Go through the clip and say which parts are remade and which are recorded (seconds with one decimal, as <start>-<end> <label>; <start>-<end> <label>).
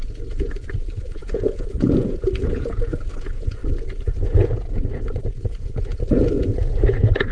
0.0-5.9 remade; 5.9-6.5 recorded; 6.5-7.3 remade